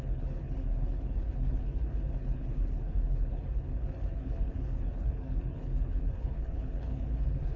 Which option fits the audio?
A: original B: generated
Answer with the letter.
B